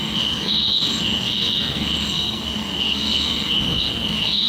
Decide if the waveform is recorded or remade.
remade